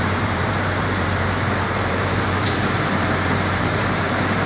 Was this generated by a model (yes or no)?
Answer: yes